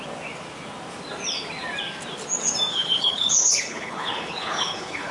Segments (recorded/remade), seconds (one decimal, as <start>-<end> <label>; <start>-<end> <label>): 0.0-2.7 recorded; 2.7-5.1 remade